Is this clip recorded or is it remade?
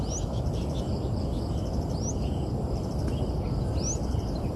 recorded